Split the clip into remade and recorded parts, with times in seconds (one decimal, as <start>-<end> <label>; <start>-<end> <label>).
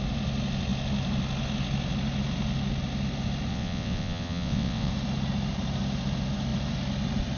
0.0-3.5 recorded; 3.5-4.9 remade; 4.9-7.4 recorded